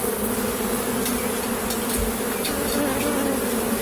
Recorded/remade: recorded